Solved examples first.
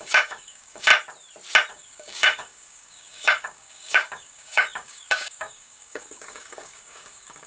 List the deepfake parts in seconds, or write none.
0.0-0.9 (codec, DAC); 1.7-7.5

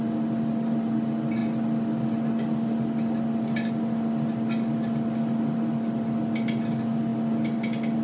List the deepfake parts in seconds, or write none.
none